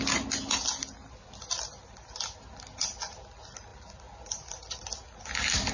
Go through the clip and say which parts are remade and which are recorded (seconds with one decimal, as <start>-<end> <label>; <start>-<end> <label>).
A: 0.0-3.7 recorded; 3.7-5.2 remade; 5.2-5.7 recorded